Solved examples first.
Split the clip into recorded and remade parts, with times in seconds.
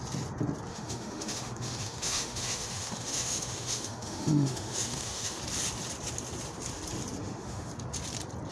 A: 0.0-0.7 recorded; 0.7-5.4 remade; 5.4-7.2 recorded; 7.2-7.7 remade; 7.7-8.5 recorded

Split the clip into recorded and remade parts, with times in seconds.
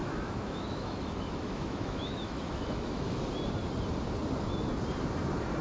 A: 0.0-3.2 remade; 3.2-5.6 recorded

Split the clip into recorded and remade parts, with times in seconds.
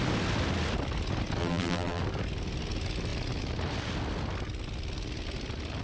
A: 0.0-1.4 recorded; 1.4-2.0 remade; 2.0-5.8 recorded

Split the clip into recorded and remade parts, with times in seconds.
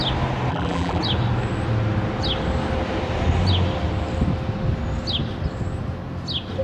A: 0.0-0.5 recorded; 0.5-1.0 remade; 1.0-6.6 recorded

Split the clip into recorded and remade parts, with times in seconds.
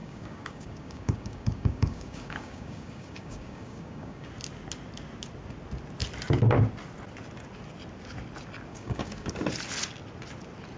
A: 0.0-4.3 remade; 4.3-8.7 recorded; 8.7-9.3 remade; 9.3-10.8 recorded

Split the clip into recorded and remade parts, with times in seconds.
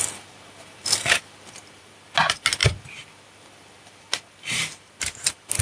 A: 0.0-5.6 recorded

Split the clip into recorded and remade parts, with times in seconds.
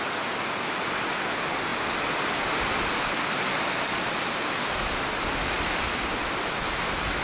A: 0.0-7.2 recorded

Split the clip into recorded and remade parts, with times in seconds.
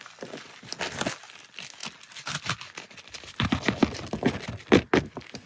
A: 0.0-5.5 recorded